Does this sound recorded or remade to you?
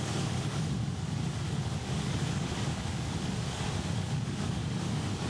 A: remade